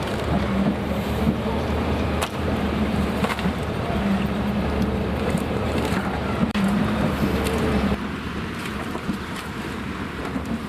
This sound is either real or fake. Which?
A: fake